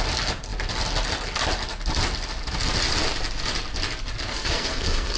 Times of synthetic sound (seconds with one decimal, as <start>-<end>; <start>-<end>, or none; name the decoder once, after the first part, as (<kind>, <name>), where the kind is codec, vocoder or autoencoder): 4.3-5.2 (codec, SNAC)